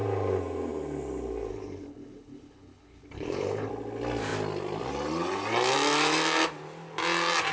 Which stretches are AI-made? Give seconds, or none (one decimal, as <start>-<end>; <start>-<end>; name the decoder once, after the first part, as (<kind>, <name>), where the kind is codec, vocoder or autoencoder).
1.5-3.7 (codec, HILCodec)